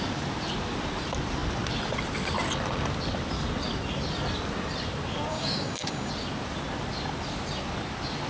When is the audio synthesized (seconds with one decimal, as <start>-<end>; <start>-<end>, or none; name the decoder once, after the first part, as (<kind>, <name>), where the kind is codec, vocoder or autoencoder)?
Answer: 5.3-6.1 (codec, DAC)